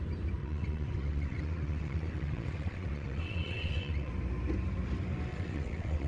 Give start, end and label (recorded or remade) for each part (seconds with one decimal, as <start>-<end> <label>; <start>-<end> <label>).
0.0-0.4 recorded; 0.4-4.1 remade; 4.1-5.3 recorded; 5.3-6.1 remade